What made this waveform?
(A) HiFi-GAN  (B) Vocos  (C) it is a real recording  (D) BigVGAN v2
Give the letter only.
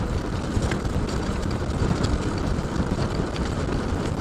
D